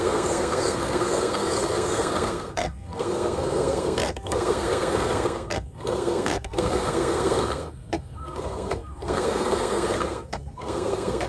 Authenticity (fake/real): fake